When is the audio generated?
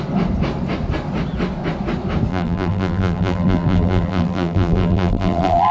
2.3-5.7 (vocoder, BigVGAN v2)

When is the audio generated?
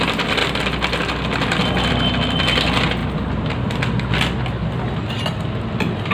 none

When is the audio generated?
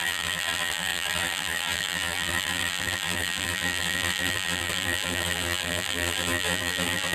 0.0-7.1 (vocoder, BigVGAN v2)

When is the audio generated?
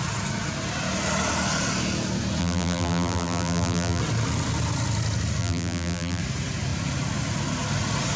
2.4-4.0 (vocoder, BigVGAN v2); 5.4-6.2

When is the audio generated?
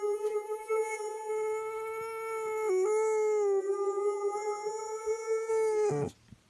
0.0-1.3 (vocoder, BigVGAN v2); 3.6-5.5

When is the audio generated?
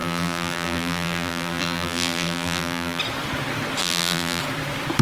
0.0-3.0 (vocoder, BigVGAN v2); 3.8-4.4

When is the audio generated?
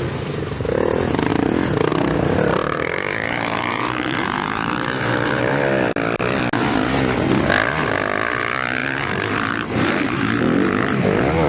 2.6-5.4 (vocoder, BigVGAN v2); 8.8-10.3